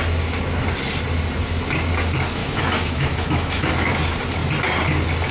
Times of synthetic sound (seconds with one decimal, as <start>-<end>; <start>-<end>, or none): 2.4-4.0

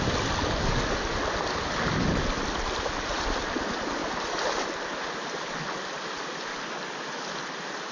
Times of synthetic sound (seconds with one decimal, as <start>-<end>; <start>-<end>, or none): none

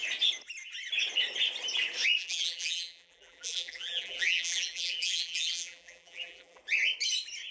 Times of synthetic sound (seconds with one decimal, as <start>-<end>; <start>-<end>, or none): 2.2-6.6

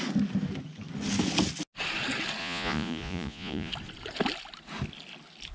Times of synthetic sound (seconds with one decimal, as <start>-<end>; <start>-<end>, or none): 2.4-3.7

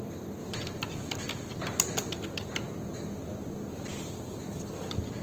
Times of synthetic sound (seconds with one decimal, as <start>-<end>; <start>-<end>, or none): none

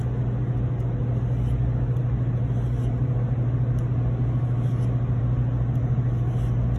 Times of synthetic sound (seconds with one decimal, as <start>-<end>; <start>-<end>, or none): none

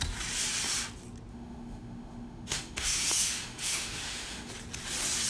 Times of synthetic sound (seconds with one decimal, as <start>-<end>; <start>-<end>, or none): 1.3-4.5

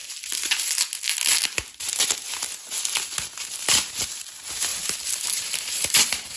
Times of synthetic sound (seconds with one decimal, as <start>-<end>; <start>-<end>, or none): 4.7-6.4